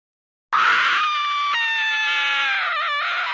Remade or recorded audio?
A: recorded